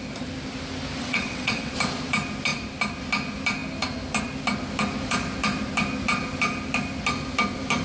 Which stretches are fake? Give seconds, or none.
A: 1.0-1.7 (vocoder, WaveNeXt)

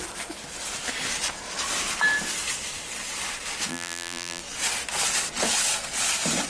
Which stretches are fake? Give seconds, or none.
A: 3.7-4.4 (vocoder, BigVGAN v2)

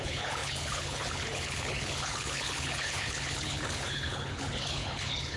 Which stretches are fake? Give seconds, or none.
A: 0.0-5.4 (codec, HILCodec)

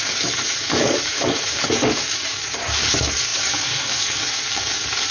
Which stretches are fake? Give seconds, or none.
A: 0.0-5.1 (codec, DAC)

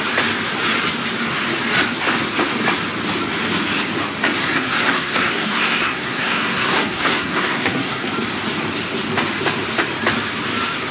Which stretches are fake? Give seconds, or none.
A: 4.4-8.1 (codec, SNAC)

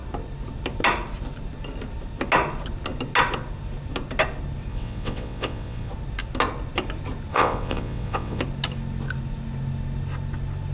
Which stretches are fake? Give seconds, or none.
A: 4.7-5.9 (vocoder, WaveNeXt); 7.3-8.4